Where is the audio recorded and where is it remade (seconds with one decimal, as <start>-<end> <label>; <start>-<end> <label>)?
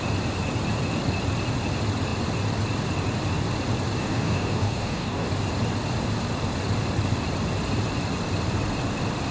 0.0-4.0 recorded; 4.0-5.3 remade; 5.3-9.3 recorded